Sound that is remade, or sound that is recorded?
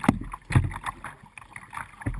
recorded